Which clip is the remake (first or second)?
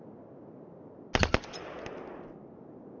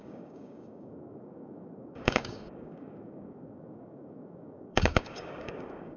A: second